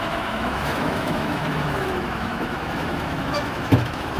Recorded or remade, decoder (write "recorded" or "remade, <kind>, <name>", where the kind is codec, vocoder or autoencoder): remade, autoencoder, DAC-VAE